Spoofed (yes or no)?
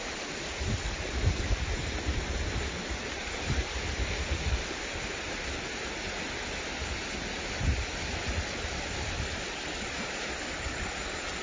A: no